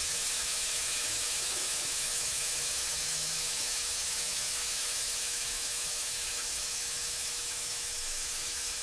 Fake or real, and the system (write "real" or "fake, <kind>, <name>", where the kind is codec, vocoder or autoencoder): fake, autoencoder, DAC-VAE